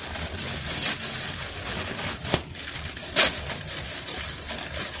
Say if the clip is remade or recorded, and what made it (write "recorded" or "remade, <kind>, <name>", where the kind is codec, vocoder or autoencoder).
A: recorded